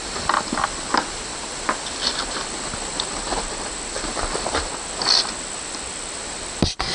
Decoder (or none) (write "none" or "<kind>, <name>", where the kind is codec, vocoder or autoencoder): none